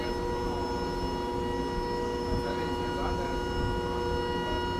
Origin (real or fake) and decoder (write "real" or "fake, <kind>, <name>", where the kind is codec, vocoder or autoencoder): real